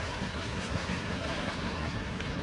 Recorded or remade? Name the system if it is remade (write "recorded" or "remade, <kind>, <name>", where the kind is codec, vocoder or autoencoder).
remade, codec, SNAC